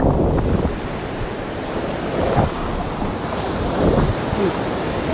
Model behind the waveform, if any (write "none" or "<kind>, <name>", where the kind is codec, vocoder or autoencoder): none